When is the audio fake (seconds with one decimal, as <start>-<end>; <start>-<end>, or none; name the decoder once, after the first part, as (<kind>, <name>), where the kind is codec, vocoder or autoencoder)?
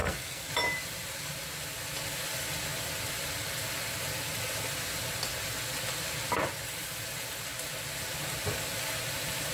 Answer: 0.0-0.5 (codec, SNAC)